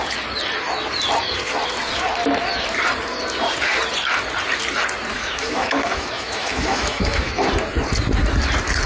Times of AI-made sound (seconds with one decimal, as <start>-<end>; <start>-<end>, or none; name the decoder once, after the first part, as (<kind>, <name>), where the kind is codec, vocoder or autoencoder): 5.1-7.5 (autoencoder, DAC-VAE)